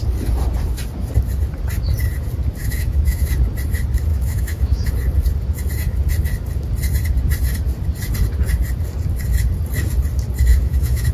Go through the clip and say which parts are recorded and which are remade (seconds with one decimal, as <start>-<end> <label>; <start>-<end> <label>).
0.0-2.6 recorded; 2.6-3.3 remade; 3.3-4.1 recorded; 4.1-4.9 remade; 4.9-10.5 recorded; 10.5-11.1 remade